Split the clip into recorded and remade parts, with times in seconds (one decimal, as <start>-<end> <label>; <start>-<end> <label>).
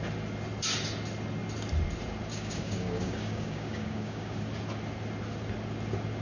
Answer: 0.0-2.3 recorded; 2.3-4.4 remade; 4.4-6.2 recorded